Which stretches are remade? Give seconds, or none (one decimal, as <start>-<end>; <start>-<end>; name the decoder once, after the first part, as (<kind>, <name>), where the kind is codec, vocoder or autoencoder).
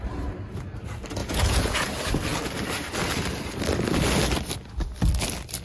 1.2-1.9 (vocoder, Vocos)